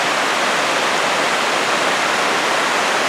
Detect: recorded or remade recorded